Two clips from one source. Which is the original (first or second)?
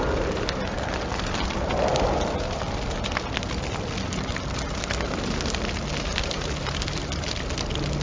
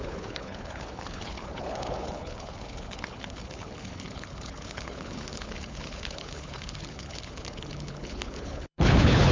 first